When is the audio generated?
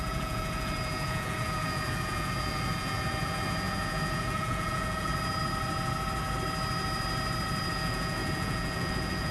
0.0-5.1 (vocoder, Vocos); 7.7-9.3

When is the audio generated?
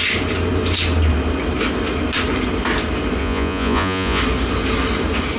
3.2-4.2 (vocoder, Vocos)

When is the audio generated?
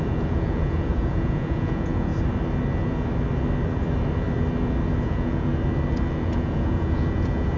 0.0-2.1 (vocoder, Vocos); 5.0-5.5; 6.1-7.6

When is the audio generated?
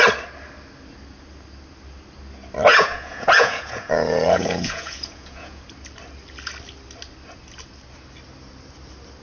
2.7-5.6 (vocoder, Vocos)